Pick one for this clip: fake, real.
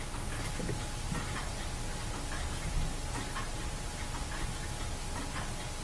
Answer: real